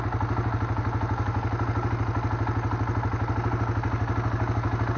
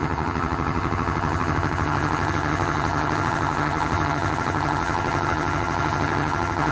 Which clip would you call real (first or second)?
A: first